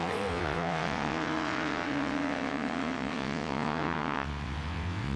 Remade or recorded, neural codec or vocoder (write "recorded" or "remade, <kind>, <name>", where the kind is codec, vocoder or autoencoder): remade, vocoder, WaveNeXt